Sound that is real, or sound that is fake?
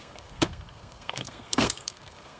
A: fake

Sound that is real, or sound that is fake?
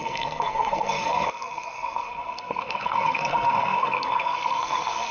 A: fake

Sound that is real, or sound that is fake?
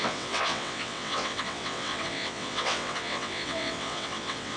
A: fake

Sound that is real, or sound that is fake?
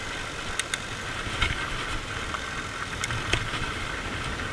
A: real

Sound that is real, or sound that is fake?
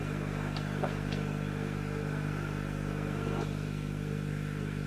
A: fake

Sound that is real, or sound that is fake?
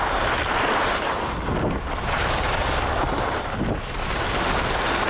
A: real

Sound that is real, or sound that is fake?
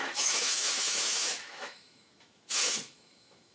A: fake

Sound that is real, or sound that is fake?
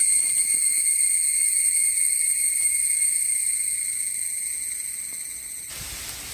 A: real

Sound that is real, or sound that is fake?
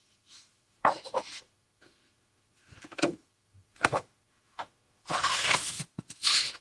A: fake